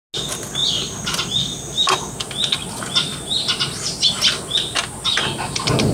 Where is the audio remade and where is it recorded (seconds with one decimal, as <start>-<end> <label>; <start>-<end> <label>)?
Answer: 0.0-2.6 recorded; 2.6-3.9 remade; 3.9-5.9 recorded